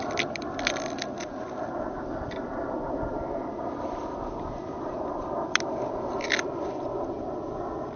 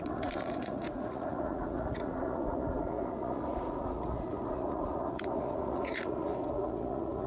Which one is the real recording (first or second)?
first